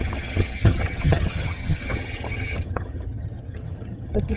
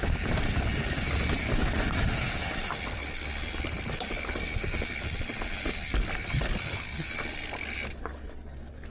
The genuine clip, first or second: second